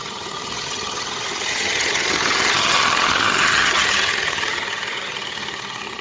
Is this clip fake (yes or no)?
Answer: yes